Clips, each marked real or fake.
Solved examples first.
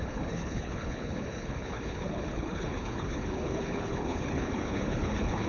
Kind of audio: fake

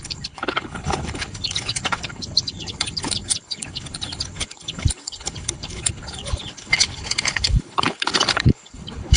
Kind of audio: fake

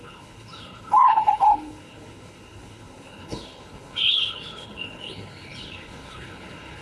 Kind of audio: fake